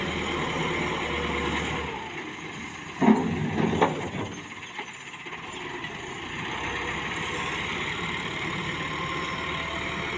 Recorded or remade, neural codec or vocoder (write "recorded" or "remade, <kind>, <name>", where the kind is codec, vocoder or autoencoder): recorded